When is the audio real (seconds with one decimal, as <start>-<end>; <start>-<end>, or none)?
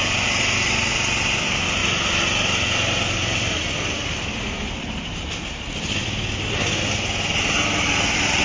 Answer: 0.0-8.4